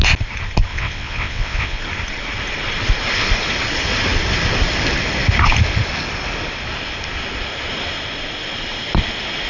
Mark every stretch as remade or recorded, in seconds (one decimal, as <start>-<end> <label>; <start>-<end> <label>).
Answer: 0.0-0.7 recorded; 0.7-1.8 remade; 1.8-9.5 recorded